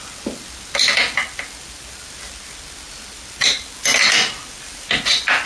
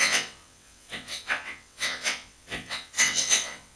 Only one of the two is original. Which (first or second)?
first